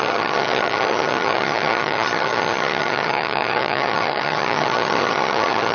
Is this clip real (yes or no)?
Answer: no